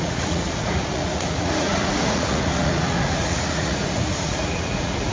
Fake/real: fake